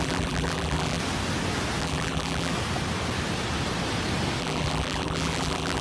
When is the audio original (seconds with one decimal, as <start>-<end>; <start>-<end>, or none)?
1.0-1.8; 2.5-4.4